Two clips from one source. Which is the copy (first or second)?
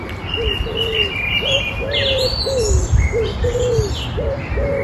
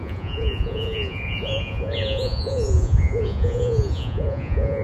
second